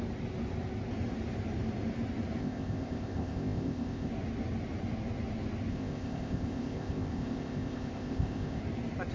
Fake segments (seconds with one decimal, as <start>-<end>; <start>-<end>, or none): 2.4-4.1; 5.7-8.6